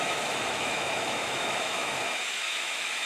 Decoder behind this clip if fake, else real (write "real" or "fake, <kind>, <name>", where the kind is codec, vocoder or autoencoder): fake, autoencoder, DAC-VAE